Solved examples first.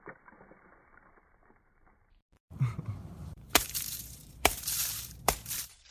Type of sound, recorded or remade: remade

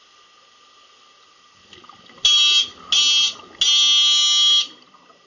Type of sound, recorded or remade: recorded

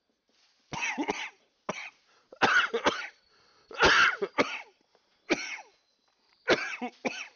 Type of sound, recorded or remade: recorded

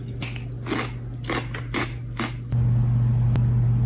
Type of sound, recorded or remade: recorded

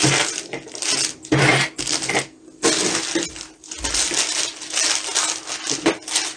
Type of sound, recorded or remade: recorded